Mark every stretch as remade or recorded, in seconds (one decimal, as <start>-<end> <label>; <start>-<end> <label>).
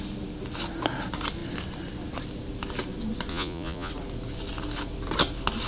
0.0-3.3 recorded; 3.3-3.9 remade; 3.9-5.7 recorded